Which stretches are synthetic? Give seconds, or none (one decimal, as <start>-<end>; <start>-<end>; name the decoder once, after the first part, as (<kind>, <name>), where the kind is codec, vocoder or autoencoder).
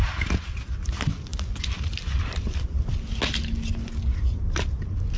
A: none